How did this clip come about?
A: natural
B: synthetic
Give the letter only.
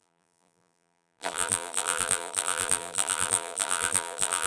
B